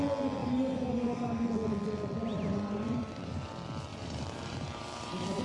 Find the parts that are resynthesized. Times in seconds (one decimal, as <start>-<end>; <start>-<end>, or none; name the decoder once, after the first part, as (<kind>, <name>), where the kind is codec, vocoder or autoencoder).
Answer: 0.4-1.5 (vocoder, BigVGAN v2); 2.3-3.5; 3.9-5.4